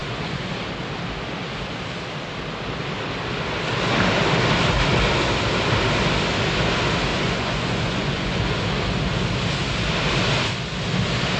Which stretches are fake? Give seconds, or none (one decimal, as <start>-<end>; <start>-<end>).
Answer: 0.0-0.5; 7.1-8.6